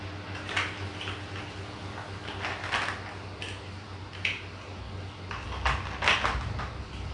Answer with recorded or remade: recorded